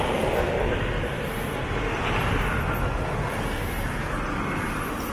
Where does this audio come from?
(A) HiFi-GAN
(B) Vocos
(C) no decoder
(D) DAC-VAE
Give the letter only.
C